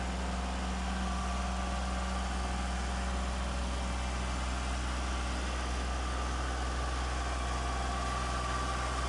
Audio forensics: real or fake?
real